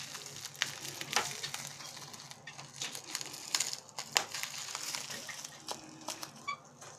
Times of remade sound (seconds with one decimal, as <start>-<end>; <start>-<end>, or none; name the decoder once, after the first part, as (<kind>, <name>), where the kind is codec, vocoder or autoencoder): none